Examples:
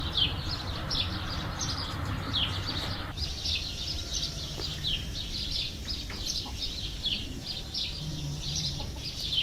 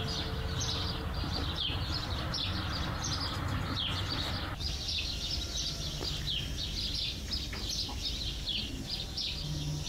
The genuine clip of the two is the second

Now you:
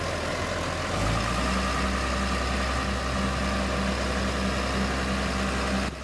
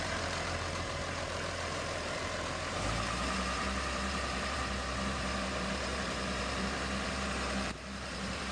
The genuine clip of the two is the first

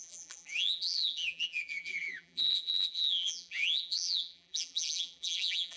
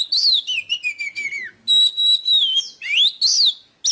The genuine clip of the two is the second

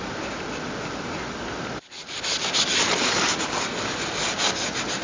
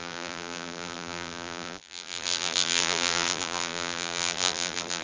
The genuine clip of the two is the first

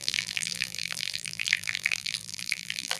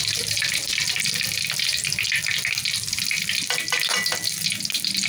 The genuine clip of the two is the second